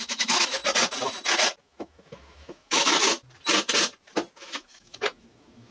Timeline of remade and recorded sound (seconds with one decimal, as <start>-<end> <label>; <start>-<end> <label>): 0.0-0.6 remade; 0.6-1.6 recorded; 1.6-3.0 remade; 3.0-4.4 recorded; 4.4-5.7 remade

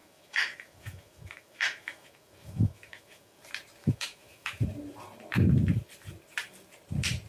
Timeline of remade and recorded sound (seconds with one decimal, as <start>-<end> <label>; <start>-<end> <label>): 0.0-3.4 remade; 3.4-3.8 recorded; 3.8-4.6 remade; 4.6-7.3 recorded

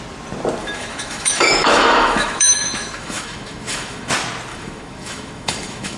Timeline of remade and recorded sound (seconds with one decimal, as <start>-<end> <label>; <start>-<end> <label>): 0.0-0.6 recorded; 0.6-4.1 remade; 4.1-4.5 recorded; 4.5-6.0 remade

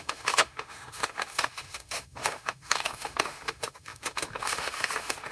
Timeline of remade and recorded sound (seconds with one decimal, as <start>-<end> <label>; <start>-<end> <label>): 0.0-5.3 remade

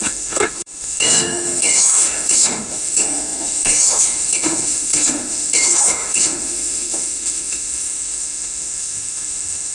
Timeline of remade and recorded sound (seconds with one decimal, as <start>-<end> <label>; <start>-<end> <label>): 0.0-9.7 remade

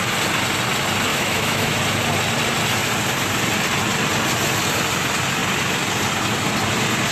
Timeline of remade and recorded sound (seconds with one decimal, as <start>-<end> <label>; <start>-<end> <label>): 0.0-1.1 recorded; 1.1-1.8 remade; 1.8-7.1 recorded

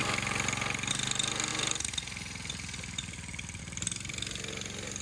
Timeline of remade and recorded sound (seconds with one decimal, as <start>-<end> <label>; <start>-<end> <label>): 0.0-5.0 recorded

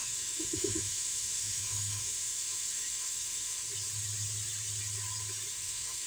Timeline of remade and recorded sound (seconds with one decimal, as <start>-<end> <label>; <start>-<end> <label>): 0.0-3.7 remade; 3.7-5.5 recorded; 5.5-6.1 remade